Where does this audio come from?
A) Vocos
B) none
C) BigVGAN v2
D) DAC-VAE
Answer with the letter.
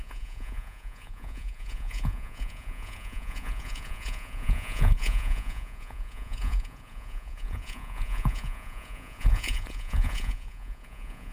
A